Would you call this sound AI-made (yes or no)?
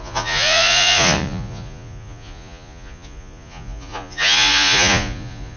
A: yes